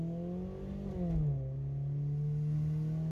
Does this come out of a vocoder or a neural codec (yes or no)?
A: no